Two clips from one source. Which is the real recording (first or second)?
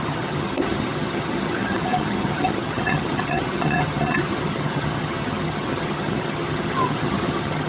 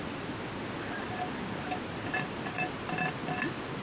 second